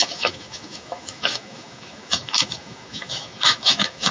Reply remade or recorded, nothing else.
remade